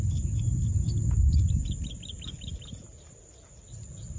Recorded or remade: recorded